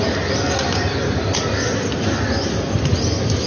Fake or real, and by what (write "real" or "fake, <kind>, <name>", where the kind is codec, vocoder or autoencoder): real